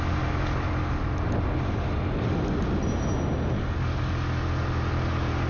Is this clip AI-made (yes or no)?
no